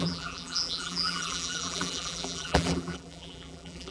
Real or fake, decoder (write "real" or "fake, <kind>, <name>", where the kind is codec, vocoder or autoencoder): fake, vocoder, BigVGAN v2